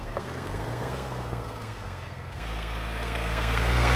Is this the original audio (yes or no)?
no